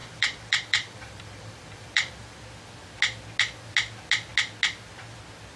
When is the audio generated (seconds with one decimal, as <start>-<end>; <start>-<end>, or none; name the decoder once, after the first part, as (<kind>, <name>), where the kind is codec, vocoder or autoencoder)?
0.0-2.4 (vocoder, BigVGAN v2)